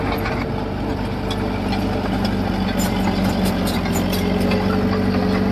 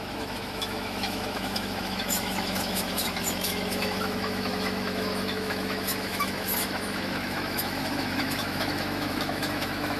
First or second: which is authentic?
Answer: first